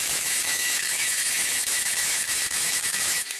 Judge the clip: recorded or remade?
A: remade